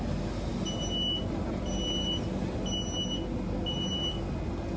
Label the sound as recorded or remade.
recorded